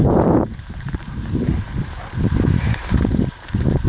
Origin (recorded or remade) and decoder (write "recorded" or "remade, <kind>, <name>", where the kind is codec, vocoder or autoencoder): remade, vocoder, BigVGAN v2